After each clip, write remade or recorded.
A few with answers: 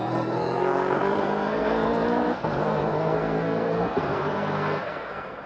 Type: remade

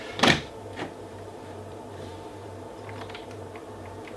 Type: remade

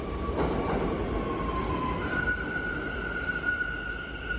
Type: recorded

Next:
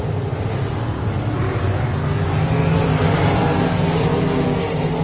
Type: recorded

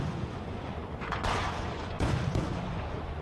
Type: remade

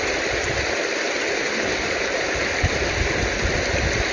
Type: recorded